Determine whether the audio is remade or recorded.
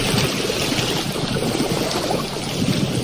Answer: recorded